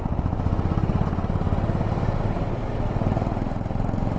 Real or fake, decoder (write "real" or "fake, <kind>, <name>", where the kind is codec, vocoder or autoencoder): real